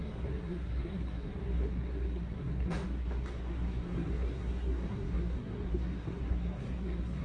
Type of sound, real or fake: fake